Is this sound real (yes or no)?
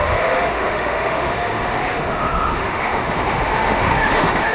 no